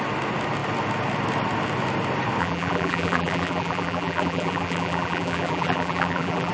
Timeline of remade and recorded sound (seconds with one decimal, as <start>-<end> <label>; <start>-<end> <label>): 0.0-2.4 recorded; 2.4-6.5 remade